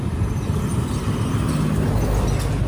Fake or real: real